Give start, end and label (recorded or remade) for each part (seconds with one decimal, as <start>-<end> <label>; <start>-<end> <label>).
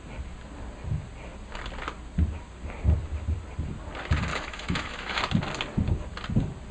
0.0-4.3 recorded; 4.3-5.2 remade; 5.2-6.7 recorded